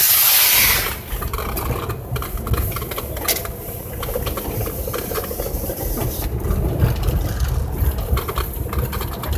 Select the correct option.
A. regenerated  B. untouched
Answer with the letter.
B